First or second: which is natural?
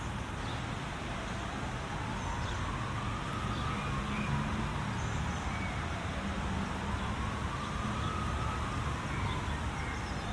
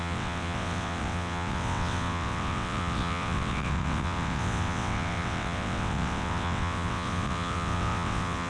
first